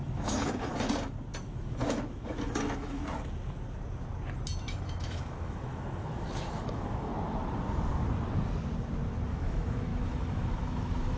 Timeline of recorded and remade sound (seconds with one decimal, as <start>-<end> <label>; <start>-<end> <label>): 0.0-0.7 remade; 0.7-1.4 recorded; 1.4-3.0 remade; 3.0-4.6 recorded; 4.6-7.1 remade; 7.1-9.3 recorded; 9.3-11.2 remade